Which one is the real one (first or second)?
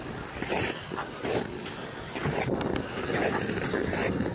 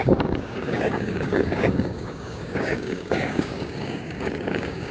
first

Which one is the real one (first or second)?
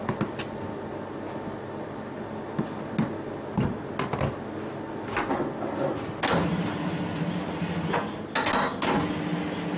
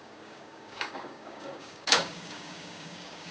first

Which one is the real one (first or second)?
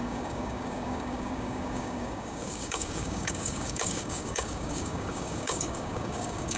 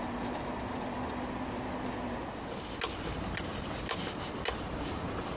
second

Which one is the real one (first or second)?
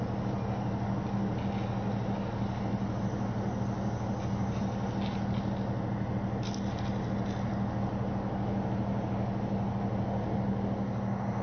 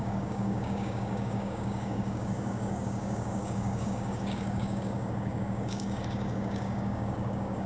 first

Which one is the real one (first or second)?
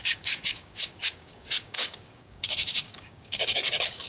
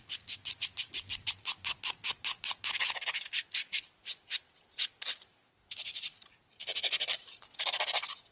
second